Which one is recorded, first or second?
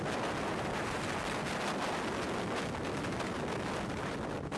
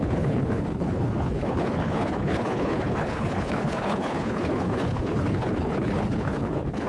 first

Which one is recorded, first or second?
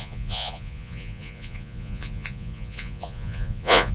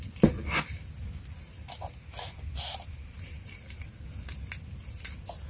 second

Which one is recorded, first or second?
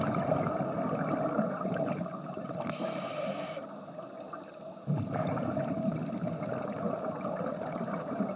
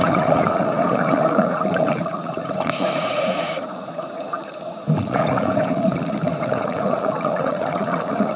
first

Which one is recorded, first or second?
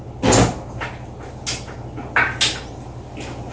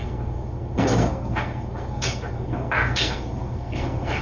first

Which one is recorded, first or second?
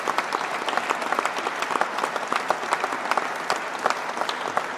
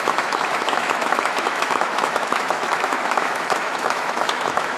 first